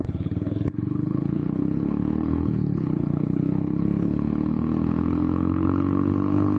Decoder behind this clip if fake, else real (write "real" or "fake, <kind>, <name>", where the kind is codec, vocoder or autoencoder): fake, codec, HILCodec